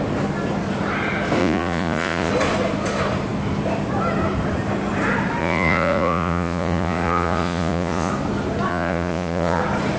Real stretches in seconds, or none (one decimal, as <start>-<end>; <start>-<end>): 0.0-1.4; 2.3-5.4; 8.1-8.7; 9.6-10.0